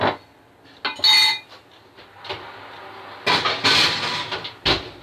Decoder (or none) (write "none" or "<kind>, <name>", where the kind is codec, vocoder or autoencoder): none